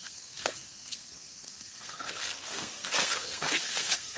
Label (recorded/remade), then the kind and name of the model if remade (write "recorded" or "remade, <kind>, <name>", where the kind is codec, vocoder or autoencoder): remade, codec, SNAC